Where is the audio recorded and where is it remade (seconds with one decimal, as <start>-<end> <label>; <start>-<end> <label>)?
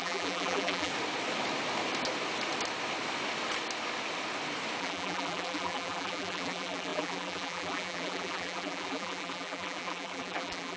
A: 0.0-0.9 remade; 0.9-4.8 recorded; 4.8-10.8 remade